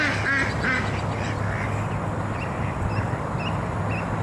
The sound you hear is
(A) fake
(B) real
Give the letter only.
B